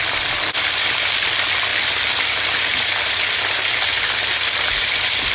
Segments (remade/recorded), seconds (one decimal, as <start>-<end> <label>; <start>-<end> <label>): 0.0-5.3 recorded

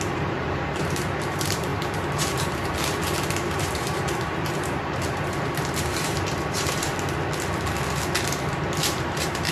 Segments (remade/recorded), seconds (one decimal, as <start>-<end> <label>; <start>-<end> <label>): 0.0-6.9 remade; 6.9-8.8 recorded; 8.8-9.5 remade